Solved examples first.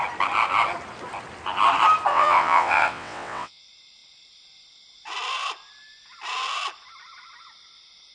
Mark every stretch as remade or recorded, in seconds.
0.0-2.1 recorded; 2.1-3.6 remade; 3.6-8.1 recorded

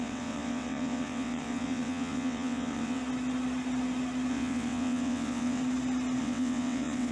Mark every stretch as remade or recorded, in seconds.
0.0-3.0 remade; 3.0-4.3 recorded; 4.3-5.6 remade; 5.6-6.2 recorded; 6.2-7.1 remade

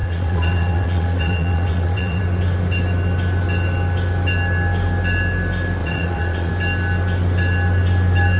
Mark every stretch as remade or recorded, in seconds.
0.0-2.2 remade; 2.2-5.8 recorded; 5.8-6.5 remade; 6.5-8.4 recorded

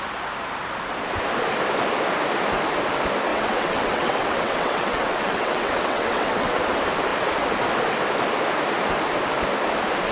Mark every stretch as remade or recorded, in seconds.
0.0-3.3 recorded; 3.3-6.6 remade; 6.6-10.1 recorded

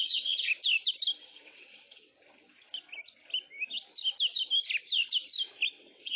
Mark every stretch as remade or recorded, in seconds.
0.0-0.5 remade; 0.5-1.2 recorded; 1.2-2.1 remade; 2.1-5.8 recorded; 5.8-6.2 remade